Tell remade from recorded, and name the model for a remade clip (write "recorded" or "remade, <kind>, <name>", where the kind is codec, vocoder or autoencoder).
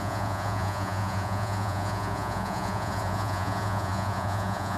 remade, vocoder, Vocos